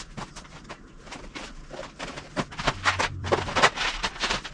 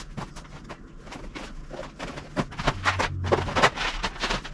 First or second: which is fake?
first